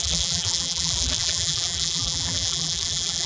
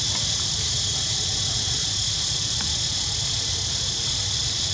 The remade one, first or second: first